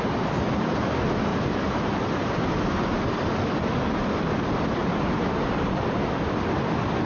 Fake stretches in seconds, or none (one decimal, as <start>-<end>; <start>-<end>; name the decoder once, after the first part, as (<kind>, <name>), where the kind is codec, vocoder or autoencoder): 1.3-3.0 (vocoder, BigVGAN v2); 4.8-5.9